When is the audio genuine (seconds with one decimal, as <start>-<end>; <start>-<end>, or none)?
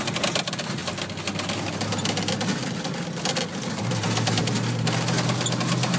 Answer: 0.0-6.0